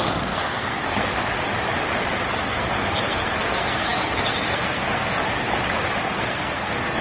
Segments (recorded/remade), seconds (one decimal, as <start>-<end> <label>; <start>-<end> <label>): 0.0-1.1 remade; 1.1-2.4 recorded; 2.4-5.2 remade; 5.2-6.0 recorded; 6.0-7.0 remade